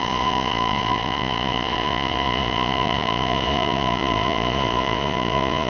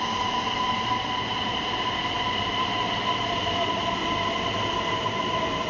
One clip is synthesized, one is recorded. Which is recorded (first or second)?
second